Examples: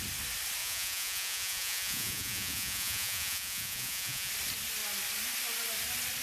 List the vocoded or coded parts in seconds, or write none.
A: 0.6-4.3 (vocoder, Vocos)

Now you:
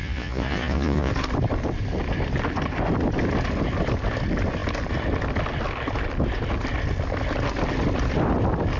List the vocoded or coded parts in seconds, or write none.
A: 0.0-1.1 (vocoder, Vocos)

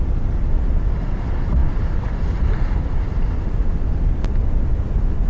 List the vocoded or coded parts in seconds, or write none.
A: none